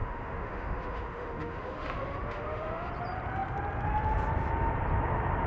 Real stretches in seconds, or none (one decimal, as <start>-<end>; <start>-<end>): 2.9-5.5